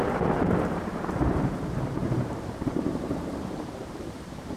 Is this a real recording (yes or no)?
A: no